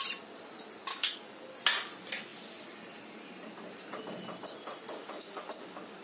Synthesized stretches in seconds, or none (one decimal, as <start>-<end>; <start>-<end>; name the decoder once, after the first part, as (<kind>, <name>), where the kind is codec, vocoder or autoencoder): 0.9-1.5 (codec, DAC); 5.0-6.0